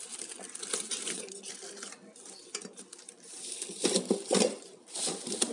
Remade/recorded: recorded